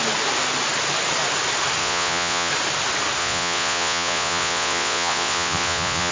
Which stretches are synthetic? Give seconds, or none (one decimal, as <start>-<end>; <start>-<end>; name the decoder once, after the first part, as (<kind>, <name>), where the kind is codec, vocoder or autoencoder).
1.8-2.5 (vocoder, Vocos); 3.2-6.1